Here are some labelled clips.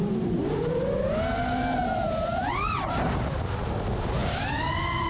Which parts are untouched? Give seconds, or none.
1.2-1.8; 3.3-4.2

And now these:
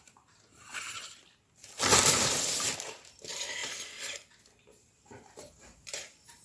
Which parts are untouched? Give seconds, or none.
0.7-2.0; 3.6-4.9

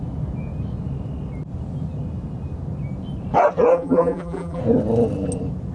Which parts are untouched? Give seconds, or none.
0.0-3.7; 4.6-5.7

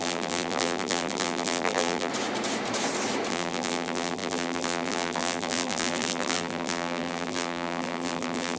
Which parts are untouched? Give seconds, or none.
2.1-3.3

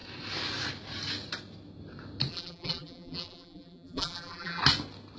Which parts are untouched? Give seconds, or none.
0.0-2.3; 4.6-5.2

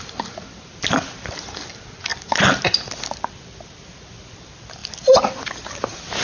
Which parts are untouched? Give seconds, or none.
0.0-6.2